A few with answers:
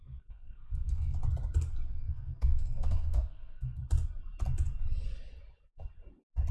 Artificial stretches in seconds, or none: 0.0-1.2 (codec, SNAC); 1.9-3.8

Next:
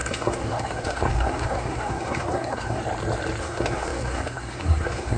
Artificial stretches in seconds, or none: 0.0-2.8 (codec, SNAC); 3.4-5.2

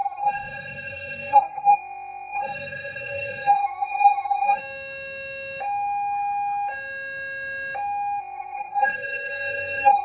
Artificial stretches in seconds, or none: 0.0-4.6 (codec, SNAC); 8.2-10.0

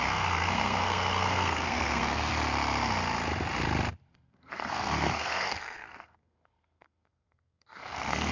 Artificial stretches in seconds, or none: 0.0-2.3 (codec, SNAC); 4.1-8.3

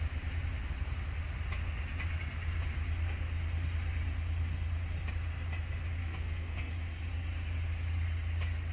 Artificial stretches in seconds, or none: 6.0-6.7 (codec, SNAC)